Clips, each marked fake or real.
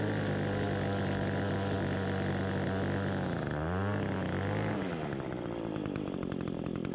real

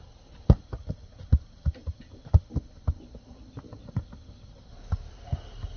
real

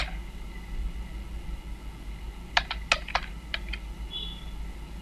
real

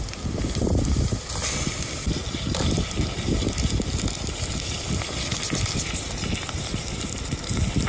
real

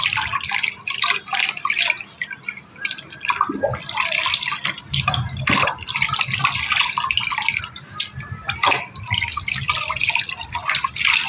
real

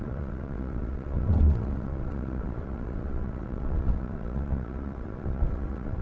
fake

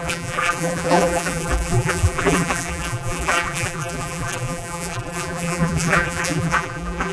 fake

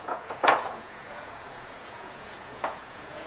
fake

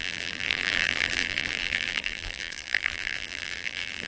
fake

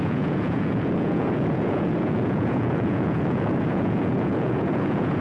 fake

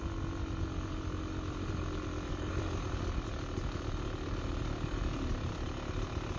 real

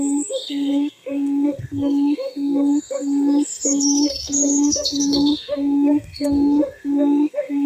fake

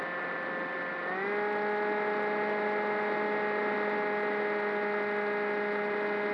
real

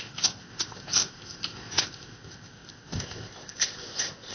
fake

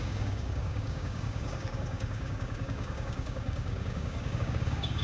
fake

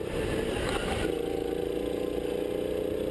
real